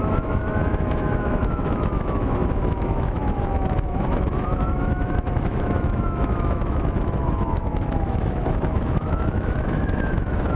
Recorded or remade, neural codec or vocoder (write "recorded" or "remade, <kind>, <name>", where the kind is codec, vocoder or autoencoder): remade, autoencoder, DAC-VAE